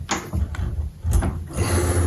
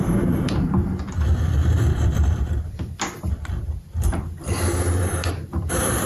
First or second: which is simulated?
second